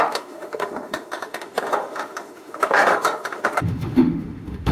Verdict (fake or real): fake